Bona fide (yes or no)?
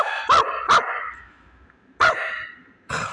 no